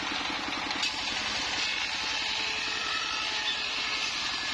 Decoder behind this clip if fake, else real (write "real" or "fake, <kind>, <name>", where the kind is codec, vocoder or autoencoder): real